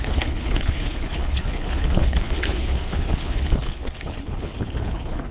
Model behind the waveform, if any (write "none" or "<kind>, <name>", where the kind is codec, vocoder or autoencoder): codec, HILCodec